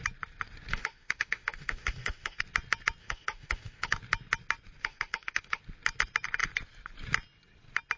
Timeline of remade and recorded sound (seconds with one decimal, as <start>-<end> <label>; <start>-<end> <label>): 0.0-0.7 recorded; 0.7-2.4 remade; 2.4-3.0 recorded; 3.0-3.9 remade; 3.9-4.8 recorded; 4.8-5.6 remade; 5.6-8.0 recorded